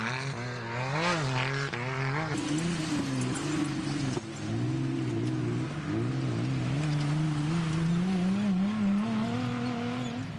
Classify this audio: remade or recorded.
recorded